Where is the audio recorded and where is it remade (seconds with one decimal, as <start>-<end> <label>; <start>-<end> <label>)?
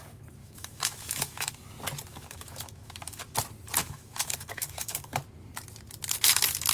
0.0-0.4 recorded; 0.4-1.5 remade; 1.5-2.1 recorded; 2.1-3.2 remade; 3.2-3.8 recorded; 3.8-5.2 remade; 5.2-6.7 recorded